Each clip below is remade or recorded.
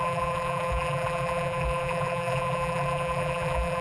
remade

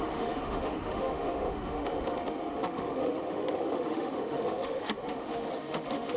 remade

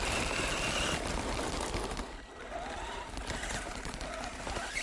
recorded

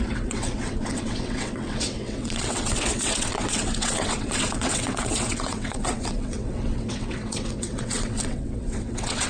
remade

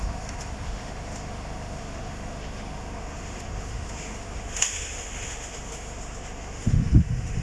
remade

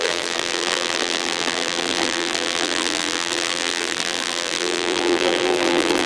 remade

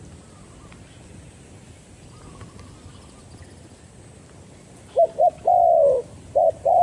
recorded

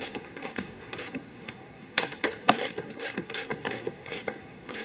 remade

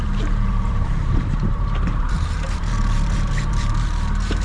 remade